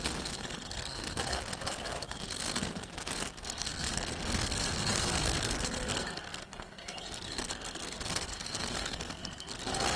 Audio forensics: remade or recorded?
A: remade